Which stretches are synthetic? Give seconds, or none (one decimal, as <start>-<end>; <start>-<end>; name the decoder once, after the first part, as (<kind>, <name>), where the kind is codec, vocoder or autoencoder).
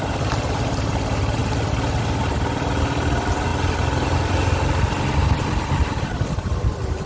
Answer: none